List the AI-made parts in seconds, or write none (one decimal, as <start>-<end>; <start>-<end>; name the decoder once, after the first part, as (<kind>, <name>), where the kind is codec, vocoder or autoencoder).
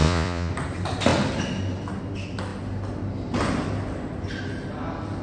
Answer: 0.0-0.5 (vocoder, Vocos)